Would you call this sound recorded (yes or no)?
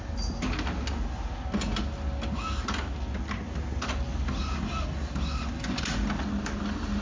yes